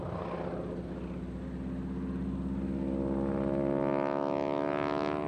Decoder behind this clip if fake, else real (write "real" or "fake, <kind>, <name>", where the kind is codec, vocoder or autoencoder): real